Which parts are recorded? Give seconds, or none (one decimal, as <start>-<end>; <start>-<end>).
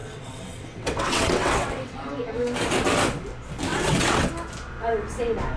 2.1-3.7; 4.3-5.6